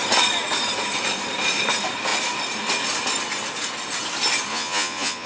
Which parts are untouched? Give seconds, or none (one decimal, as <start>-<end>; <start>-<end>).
0.0-4.5